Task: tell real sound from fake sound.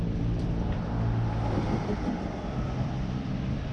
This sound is fake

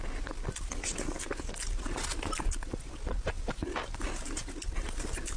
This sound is real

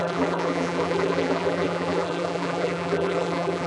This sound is fake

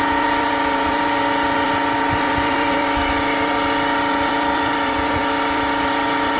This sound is fake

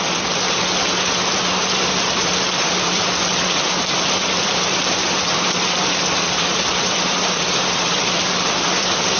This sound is fake